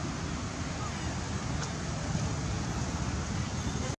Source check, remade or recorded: recorded